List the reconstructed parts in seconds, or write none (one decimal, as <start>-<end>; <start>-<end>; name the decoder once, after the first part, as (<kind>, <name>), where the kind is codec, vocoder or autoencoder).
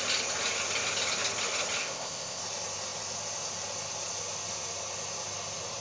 1.8-2.4 (codec, ZipCodec)